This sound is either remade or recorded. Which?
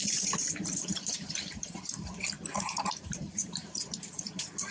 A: remade